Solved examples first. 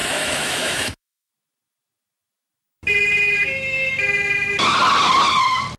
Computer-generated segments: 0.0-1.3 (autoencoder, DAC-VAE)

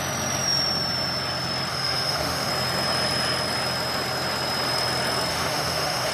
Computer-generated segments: 1.7-2.5 (autoencoder, DAC-VAE); 5.3-6.1

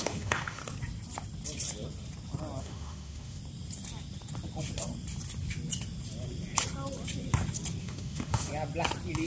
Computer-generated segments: 0.0-0.6 (autoencoder, DAC-VAE); 2.6-3.4; 7.8-8.5

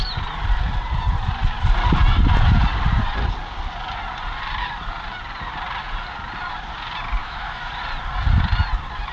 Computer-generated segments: 7.2-7.7 (autoencoder, DAC-VAE)